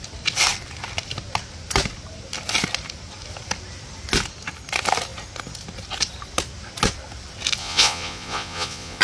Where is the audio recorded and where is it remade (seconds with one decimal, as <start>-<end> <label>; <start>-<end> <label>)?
0.0-7.6 recorded; 7.6-9.0 remade